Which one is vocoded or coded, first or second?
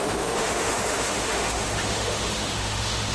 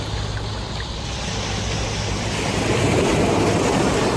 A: first